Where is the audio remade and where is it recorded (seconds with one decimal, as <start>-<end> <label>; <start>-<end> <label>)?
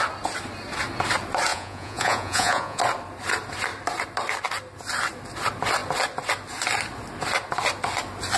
0.0-1.5 recorded; 1.5-2.8 remade; 2.8-8.4 recorded